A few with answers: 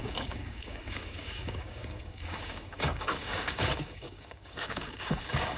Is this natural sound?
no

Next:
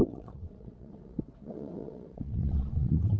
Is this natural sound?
no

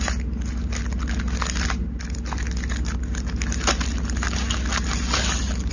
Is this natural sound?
yes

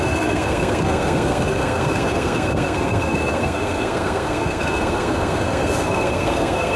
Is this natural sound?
no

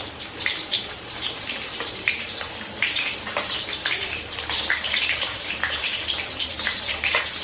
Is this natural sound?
no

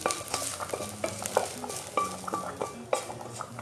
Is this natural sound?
yes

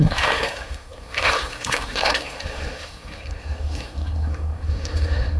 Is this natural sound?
no